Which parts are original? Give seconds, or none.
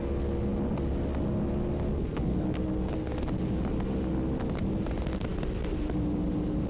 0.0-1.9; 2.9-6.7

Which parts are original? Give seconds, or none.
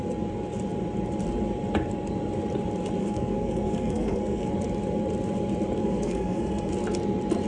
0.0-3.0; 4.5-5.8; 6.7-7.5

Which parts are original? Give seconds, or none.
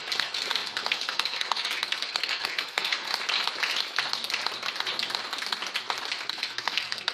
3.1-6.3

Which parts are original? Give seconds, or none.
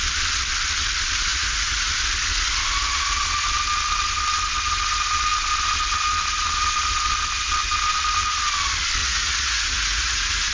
0.0-1.3; 1.9-9.0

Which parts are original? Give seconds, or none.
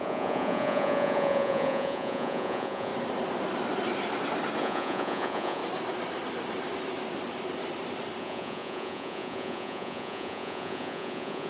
2.9-4.6; 5.6-8.2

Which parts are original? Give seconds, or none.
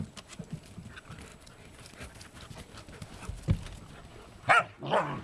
0.0-5.2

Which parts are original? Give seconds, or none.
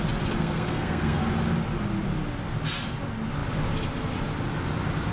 0.0-0.4; 1.2-5.1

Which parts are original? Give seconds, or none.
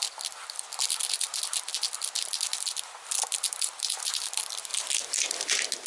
0.0-5.9